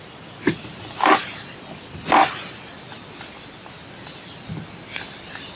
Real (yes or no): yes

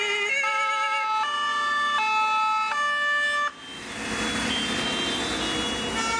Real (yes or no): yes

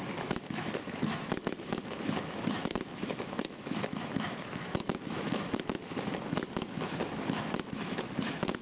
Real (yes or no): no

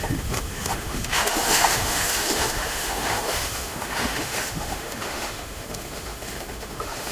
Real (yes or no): no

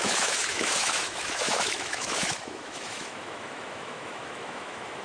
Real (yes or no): no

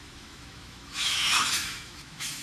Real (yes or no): no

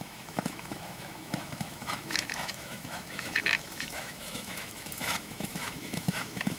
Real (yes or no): no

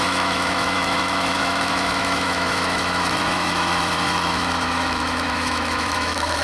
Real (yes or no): no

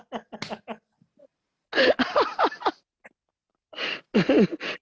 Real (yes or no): yes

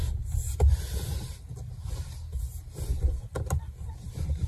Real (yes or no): yes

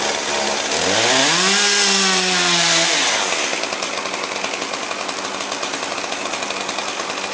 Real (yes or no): yes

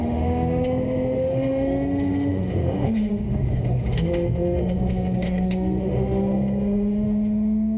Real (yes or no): no